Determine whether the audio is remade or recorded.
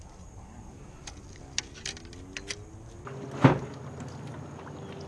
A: recorded